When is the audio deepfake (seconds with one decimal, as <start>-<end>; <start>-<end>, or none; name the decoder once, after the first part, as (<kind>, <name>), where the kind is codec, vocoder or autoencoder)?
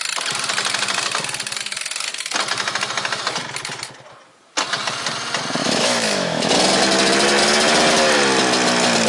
5.6-6.5 (autoencoder, DAC-VAE)